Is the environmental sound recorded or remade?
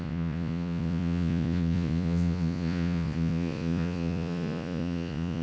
remade